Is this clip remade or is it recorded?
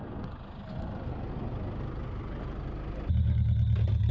recorded